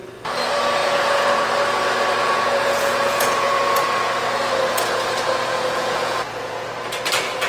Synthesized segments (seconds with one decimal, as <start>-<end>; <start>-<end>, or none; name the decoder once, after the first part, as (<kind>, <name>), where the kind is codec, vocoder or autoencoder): 0.8-1.5 (vocoder, Vocos); 2.2-6.7

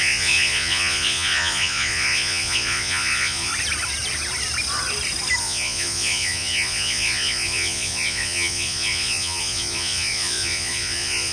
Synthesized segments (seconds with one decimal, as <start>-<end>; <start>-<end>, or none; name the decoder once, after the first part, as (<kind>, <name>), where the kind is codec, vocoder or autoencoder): 0.0-3.5 (vocoder, Vocos); 5.4-11.3

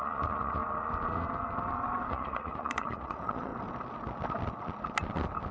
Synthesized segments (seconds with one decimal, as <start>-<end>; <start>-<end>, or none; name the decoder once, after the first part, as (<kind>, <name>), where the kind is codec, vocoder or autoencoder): 0.0-0.6 (vocoder, Vocos); 2.1-3.5

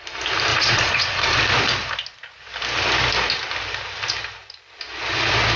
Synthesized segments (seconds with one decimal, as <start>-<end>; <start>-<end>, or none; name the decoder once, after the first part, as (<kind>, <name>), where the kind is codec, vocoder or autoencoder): 0.5-1.4 (vocoder, Vocos)

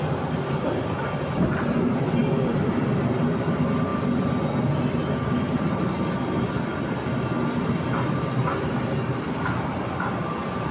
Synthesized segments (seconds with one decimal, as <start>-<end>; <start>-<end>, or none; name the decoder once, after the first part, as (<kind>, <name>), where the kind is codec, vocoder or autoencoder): none

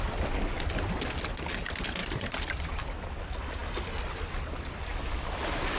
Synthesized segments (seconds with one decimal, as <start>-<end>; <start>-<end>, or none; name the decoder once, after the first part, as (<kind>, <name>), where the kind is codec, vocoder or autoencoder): none